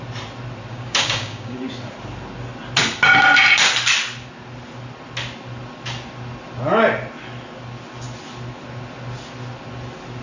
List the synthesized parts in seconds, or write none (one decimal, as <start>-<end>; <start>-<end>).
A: 0.7-1.6